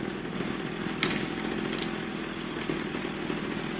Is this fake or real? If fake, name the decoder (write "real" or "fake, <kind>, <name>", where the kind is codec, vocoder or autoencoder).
real